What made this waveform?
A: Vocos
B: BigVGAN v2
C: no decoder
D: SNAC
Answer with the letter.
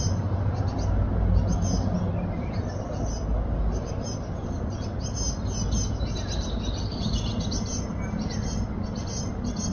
C